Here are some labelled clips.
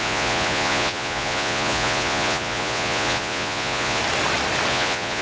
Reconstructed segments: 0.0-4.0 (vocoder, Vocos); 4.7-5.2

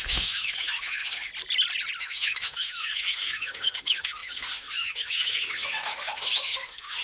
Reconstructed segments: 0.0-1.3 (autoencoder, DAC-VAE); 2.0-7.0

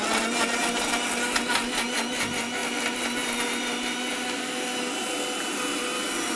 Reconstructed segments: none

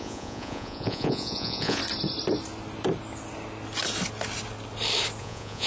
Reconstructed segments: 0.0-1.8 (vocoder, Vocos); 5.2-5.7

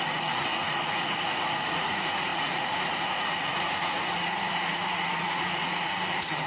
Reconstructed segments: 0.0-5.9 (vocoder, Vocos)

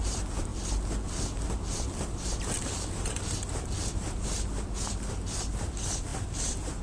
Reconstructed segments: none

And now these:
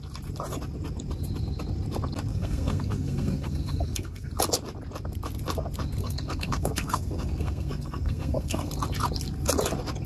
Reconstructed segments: 2.3-4.3 (codec, SNAC); 6.0-8.7